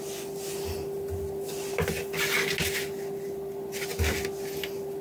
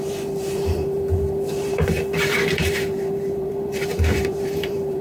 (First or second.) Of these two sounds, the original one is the first